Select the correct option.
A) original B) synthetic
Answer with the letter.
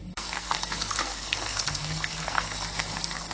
B